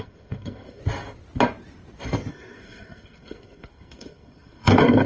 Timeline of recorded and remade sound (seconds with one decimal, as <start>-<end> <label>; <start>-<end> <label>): 0.0-0.8 remade; 0.8-2.3 recorded; 2.3-5.1 remade